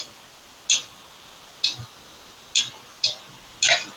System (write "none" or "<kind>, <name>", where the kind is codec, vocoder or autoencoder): none